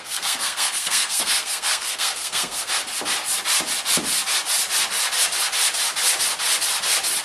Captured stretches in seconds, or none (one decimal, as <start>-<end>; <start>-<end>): 2.7-7.2